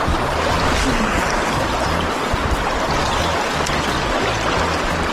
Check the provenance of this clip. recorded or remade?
recorded